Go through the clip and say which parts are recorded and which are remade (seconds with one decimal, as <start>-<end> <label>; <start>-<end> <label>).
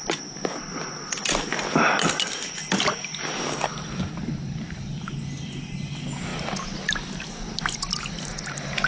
0.0-8.9 recorded